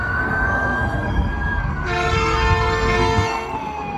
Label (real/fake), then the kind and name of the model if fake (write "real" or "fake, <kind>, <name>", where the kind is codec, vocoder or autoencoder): fake, codec, SNAC